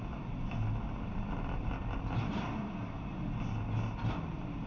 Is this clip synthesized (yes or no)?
no